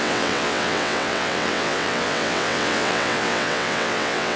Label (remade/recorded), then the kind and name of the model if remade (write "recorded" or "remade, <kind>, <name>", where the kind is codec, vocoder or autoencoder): remade, vocoder, WaveNeXt